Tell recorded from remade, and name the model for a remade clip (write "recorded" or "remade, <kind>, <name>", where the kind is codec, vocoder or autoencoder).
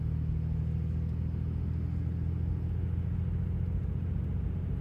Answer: recorded